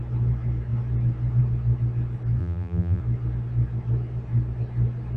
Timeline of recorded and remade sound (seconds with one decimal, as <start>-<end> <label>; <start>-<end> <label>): 0.0-2.4 recorded; 2.4-3.0 remade; 3.0-5.2 recorded